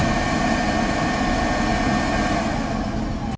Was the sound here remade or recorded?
recorded